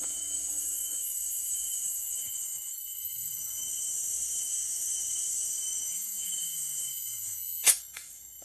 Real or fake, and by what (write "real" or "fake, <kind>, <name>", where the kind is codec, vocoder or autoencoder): fake, autoencoder, DAC-VAE